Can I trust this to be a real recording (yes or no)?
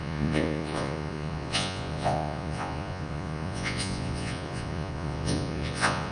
no